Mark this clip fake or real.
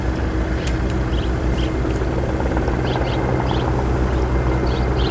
real